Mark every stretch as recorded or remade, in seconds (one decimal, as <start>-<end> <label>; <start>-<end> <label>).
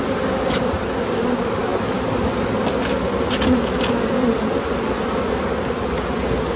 0.0-6.6 recorded